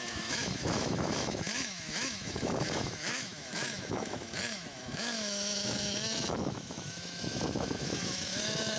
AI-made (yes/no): yes